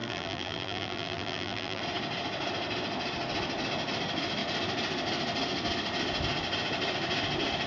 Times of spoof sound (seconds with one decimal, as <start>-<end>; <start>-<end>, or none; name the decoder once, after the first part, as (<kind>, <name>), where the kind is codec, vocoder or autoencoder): 0.0-1.8 (vocoder, BigVGAN v2)